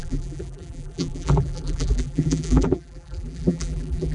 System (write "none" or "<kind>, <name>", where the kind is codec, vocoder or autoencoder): vocoder, BigVGAN v2